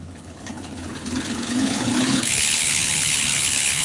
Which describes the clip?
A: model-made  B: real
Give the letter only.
A